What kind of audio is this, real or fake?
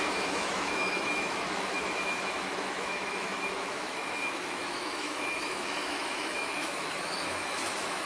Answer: fake